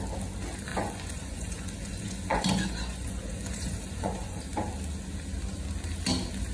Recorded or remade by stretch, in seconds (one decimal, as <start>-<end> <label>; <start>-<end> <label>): 0.0-0.7 recorded; 0.7-4.4 remade; 4.4-6.5 recorded